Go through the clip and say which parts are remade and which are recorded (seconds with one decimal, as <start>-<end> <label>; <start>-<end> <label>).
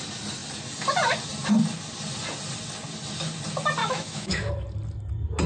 0.0-3.8 recorded; 3.8-4.5 remade; 4.5-5.5 recorded